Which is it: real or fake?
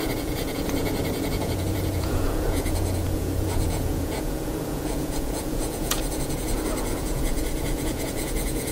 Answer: fake